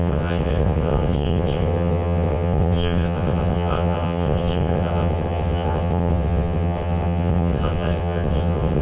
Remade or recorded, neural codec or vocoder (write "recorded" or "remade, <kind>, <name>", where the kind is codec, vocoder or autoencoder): remade, vocoder, WaveNeXt